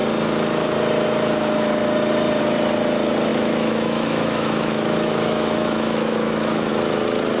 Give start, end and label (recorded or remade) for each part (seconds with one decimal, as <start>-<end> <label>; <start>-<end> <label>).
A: 0.0-3.3 recorded; 3.3-6.7 remade; 6.7-7.4 recorded